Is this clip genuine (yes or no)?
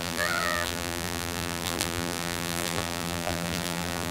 no